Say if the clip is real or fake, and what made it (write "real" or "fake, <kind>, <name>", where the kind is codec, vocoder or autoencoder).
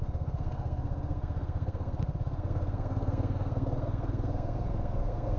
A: fake, codec, SNAC